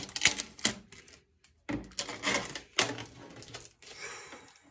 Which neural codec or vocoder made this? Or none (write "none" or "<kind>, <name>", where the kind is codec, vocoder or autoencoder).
none